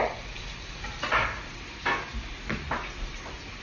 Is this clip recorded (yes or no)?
yes